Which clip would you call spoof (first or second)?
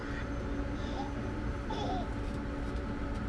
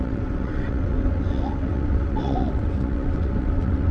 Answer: second